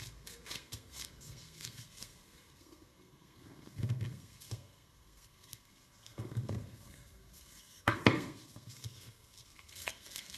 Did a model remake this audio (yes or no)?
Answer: yes